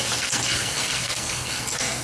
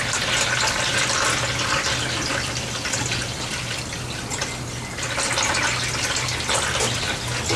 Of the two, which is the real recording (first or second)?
second